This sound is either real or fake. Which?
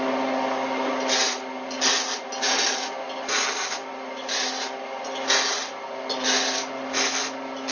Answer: real